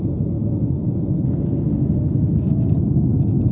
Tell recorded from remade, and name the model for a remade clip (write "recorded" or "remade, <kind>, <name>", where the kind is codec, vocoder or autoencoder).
recorded